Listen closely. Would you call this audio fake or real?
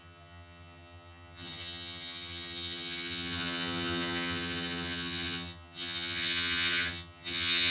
fake